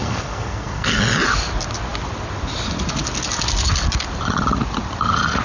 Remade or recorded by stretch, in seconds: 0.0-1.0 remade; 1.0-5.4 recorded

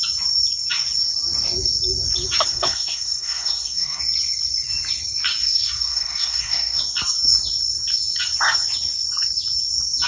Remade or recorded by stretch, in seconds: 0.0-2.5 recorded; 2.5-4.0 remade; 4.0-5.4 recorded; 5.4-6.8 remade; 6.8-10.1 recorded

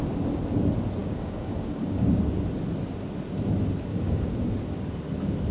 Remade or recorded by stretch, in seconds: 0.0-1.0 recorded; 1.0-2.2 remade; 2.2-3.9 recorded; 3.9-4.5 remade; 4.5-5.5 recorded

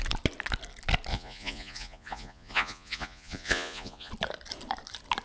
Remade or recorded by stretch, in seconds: 0.0-1.1 recorded; 1.1-4.1 remade; 4.1-5.2 recorded

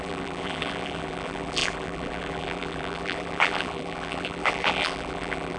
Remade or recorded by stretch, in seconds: 0.0-5.6 remade

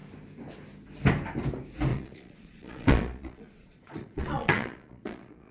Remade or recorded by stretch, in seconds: 0.0-1.9 recorded; 1.9-5.5 remade

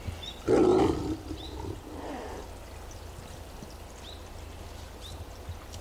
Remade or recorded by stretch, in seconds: 0.0-0.7 recorded; 0.7-2.3 remade; 2.3-5.8 recorded